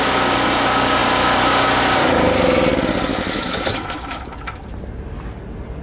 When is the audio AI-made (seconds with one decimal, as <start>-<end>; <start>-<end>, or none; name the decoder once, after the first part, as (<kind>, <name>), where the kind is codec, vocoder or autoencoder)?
3.1-4.2 (autoencoder, DAC-VAE)

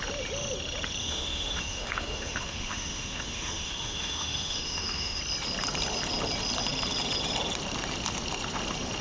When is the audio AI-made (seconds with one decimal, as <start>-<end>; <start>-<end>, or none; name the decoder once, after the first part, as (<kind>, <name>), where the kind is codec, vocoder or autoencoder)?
1.0-5.2 (autoencoder, DAC-VAE)

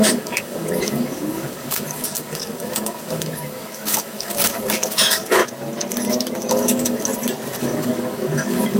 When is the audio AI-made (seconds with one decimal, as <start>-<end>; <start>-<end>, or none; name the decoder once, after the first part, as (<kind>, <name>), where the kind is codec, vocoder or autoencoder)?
0.0-5.4 (codec, DAC); 6.5-7.1; 7.6-8.8